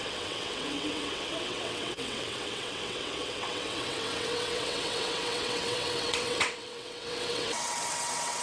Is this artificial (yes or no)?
yes